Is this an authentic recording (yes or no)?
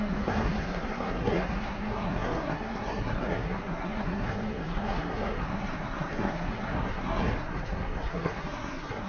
no